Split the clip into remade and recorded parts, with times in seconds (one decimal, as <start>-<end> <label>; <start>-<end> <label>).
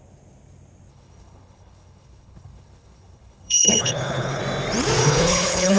0.0-0.9 recorded; 0.9-4.4 remade; 4.4-5.0 recorded; 5.0-5.8 remade